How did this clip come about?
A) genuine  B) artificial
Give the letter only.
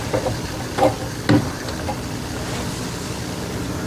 A